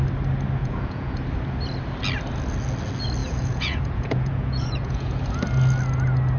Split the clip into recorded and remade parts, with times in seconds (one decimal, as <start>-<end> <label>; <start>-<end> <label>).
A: 0.0-0.6 recorded; 0.6-1.1 remade; 1.1-3.2 recorded; 3.2-5.2 remade; 5.2-6.4 recorded